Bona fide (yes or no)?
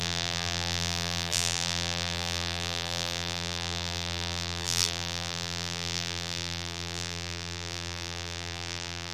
no